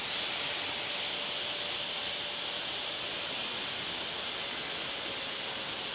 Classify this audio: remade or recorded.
recorded